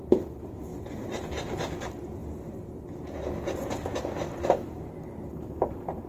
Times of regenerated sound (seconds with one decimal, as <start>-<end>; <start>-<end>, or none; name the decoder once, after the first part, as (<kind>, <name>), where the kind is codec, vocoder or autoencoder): none

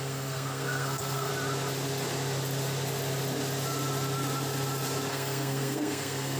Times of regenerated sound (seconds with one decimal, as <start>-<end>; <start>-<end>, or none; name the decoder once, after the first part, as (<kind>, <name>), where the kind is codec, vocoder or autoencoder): 0.0-1.3 (codec, SNAC); 5.1-6.4